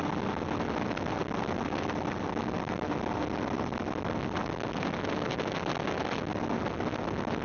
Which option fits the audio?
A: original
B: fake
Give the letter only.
A